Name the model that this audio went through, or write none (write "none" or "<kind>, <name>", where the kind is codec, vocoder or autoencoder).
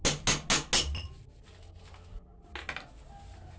none